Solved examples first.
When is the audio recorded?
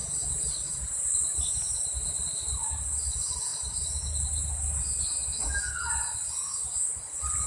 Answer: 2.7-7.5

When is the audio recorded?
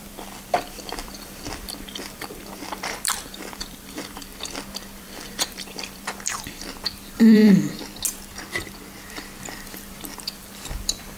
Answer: 4.3-5.0; 7.4-9.4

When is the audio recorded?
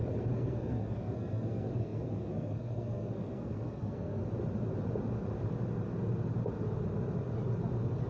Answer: 4.2-8.1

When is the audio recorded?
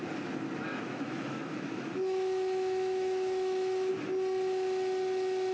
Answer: 0.0-0.7; 3.9-5.5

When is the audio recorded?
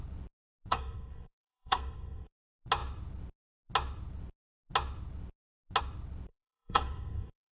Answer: 0.0-0.7; 2.3-6.3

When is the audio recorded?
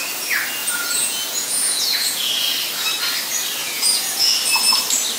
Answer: 0.0-0.6; 2.3-3.6; 4.3-5.2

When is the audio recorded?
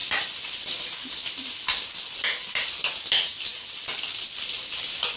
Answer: 0.0-5.2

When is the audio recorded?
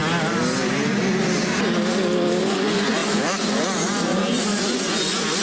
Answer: 0.0-2.4